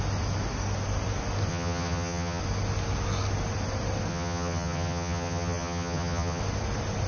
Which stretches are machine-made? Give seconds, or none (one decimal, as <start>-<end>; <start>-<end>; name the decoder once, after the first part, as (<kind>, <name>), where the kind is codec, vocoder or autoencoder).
1.5-2.4 (vocoder, HiFi-GAN); 4.1-6.4